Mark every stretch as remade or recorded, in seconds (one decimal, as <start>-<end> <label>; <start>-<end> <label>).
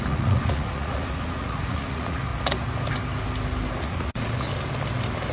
0.0-2.3 remade; 2.3-3.8 recorded; 3.8-4.5 remade; 4.5-5.3 recorded